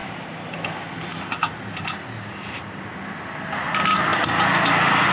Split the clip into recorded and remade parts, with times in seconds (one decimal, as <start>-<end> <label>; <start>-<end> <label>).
0.0-5.1 recorded